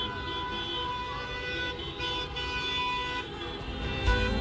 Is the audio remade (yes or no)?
no